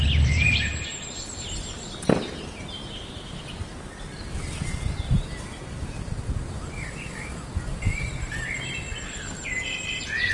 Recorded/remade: recorded